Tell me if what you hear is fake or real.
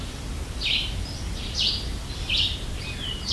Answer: fake